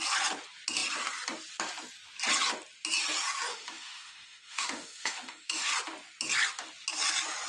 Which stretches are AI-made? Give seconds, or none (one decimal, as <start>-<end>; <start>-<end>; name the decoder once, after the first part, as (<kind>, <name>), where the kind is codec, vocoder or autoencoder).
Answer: 3.5-5.7 (autoencoder, DAC-VAE)

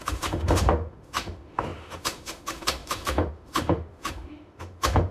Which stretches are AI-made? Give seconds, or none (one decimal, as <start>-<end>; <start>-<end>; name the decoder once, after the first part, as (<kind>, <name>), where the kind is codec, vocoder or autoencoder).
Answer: 0.0-5.1 (autoencoder, DAC-VAE)

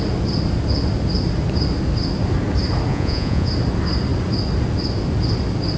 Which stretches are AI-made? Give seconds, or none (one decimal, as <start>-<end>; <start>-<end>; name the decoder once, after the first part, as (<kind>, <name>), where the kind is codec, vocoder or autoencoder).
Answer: 2.9-3.5 (vocoder, Vocos)

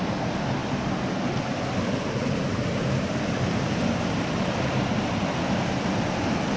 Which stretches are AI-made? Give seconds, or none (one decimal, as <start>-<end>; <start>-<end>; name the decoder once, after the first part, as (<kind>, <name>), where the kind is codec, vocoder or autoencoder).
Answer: none